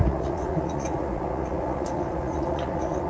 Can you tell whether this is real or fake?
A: fake